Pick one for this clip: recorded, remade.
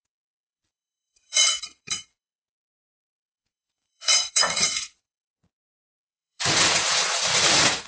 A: remade